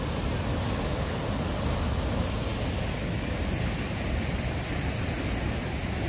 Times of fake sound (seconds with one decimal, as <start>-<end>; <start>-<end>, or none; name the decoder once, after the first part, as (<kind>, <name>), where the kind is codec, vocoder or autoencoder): none